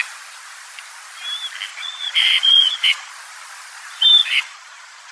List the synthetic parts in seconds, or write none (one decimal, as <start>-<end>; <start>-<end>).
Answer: 1.7-3.1; 4.2-5.1